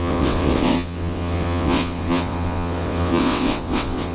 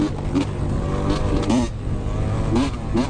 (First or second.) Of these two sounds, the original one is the second